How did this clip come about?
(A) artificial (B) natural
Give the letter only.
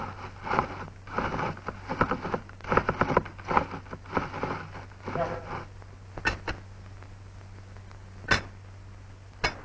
B